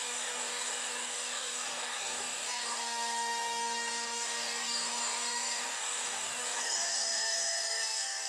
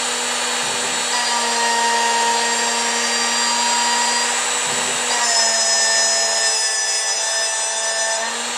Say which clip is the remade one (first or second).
first